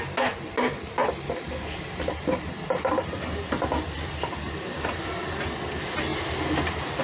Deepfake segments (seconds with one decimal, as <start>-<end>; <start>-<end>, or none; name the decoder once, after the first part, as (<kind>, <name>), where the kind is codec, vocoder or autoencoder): none